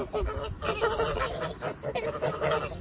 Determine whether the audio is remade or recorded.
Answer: recorded